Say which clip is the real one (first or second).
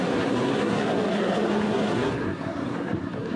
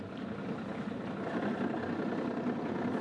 second